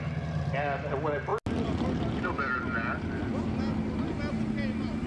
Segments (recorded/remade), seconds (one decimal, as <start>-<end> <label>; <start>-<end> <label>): 0.0-5.1 recorded